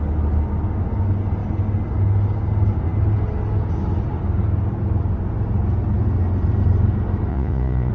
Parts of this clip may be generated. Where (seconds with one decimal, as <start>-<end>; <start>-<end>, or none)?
7.3-7.9

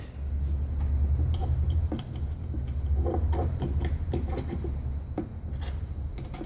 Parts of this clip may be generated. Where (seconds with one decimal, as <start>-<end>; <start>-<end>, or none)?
none

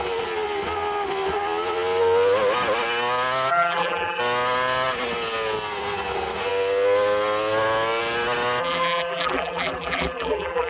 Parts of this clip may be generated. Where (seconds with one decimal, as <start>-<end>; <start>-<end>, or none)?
3.5-4.2; 8.6-10.7

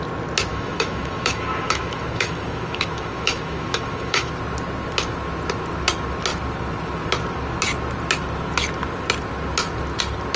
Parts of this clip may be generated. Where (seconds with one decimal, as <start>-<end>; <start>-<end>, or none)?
0.5-4.3

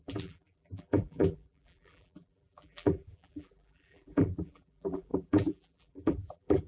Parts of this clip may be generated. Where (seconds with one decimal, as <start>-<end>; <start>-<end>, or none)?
0.0-6.7

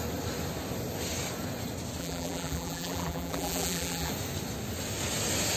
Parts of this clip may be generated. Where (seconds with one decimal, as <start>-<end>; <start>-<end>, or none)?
2.0-4.1

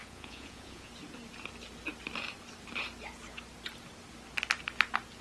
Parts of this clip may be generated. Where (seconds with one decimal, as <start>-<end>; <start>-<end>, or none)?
0.0-0.9

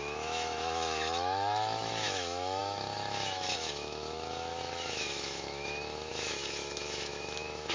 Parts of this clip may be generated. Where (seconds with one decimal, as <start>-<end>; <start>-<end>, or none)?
0.0-7.7